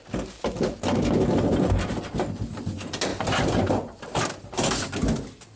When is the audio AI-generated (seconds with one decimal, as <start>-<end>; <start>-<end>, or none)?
none